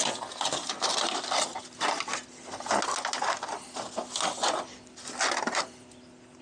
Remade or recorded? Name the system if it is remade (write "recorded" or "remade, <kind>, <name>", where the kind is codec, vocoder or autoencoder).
recorded